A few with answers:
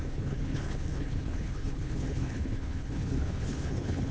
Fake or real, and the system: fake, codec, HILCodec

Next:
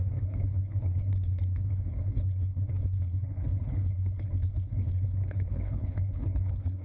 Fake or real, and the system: fake, codec, HILCodec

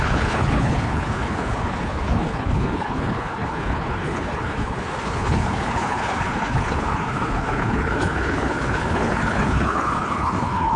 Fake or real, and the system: fake, codec, HILCodec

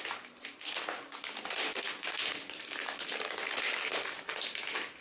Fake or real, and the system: real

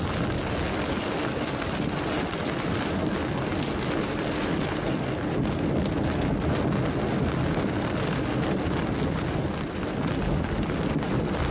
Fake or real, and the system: real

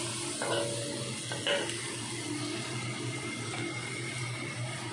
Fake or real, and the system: real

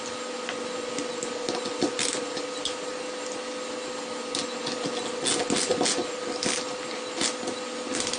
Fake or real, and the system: real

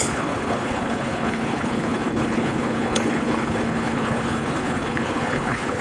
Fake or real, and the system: fake, codec, HILCodec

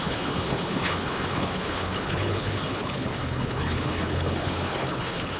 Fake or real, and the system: fake, codec, HILCodec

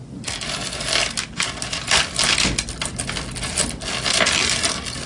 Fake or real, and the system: real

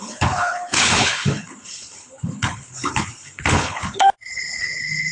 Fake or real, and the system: fake, codec, HILCodec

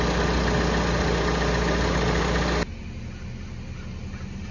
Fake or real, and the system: real